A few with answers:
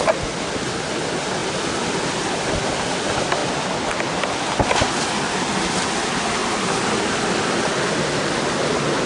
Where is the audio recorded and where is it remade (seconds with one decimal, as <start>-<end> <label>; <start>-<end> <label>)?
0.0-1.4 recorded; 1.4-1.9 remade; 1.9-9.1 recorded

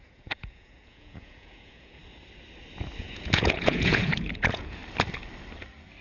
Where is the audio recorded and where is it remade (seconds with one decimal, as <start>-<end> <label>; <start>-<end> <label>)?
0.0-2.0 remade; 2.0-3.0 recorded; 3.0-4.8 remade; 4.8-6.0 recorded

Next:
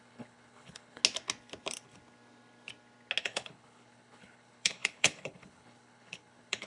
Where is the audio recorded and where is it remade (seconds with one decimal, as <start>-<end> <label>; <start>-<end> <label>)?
0.0-1.0 remade; 1.0-3.2 recorded; 3.2-6.7 remade

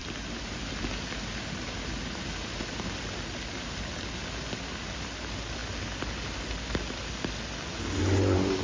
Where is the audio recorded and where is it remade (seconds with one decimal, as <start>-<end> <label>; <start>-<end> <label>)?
0.0-8.6 recorded